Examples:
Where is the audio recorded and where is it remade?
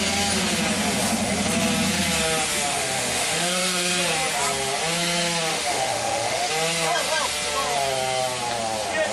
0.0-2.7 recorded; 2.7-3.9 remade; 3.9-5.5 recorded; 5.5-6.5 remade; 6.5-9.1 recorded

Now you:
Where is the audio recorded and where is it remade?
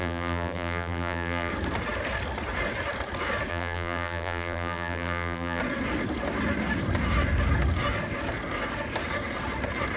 0.0-1.5 remade; 1.5-3.5 recorded; 3.5-5.6 remade; 5.6-10.0 recorded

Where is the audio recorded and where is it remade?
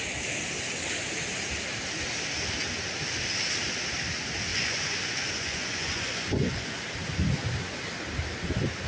0.0-4.5 recorded; 4.5-6.8 remade; 6.8-8.9 recorded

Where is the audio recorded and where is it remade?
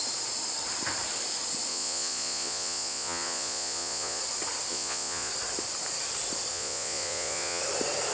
0.0-1.7 recorded; 1.7-4.2 remade; 4.2-4.7 recorded; 4.7-5.3 remade; 5.3-6.5 recorded; 6.5-7.6 remade; 7.6-8.1 recorded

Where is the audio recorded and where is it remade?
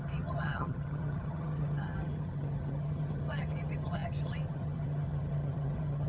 0.0-6.1 remade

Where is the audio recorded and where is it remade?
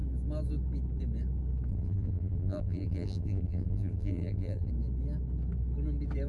0.0-1.7 recorded; 1.7-4.7 remade; 4.7-6.3 recorded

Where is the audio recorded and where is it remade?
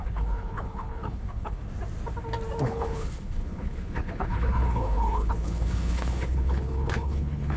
0.0-1.6 remade; 1.6-2.6 recorded; 2.6-7.6 remade